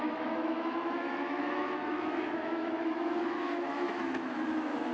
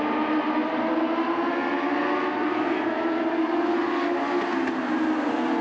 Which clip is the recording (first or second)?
second